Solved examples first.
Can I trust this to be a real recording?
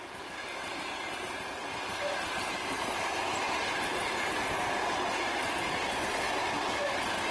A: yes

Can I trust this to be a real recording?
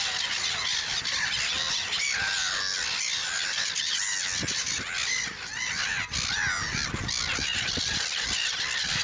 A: yes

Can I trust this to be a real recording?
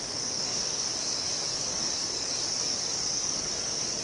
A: no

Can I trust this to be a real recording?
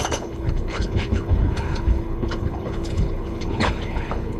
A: no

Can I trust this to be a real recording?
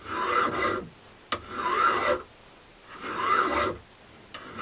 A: yes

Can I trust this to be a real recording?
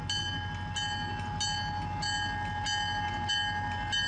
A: yes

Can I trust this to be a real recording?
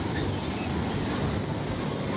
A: yes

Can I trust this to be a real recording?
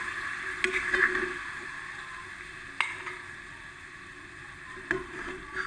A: yes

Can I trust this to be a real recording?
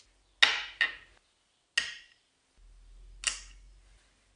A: yes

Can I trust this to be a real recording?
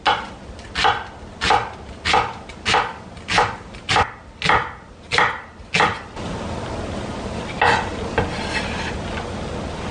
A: yes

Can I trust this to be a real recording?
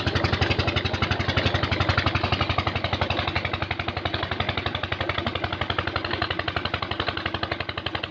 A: yes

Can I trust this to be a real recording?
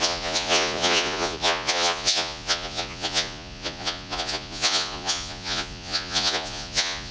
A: no